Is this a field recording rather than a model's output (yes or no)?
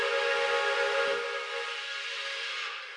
yes